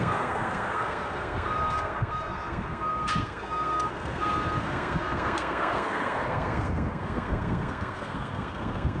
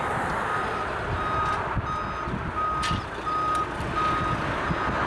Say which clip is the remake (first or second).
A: first